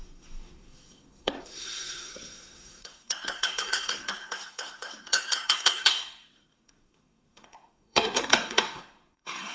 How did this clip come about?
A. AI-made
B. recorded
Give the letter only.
A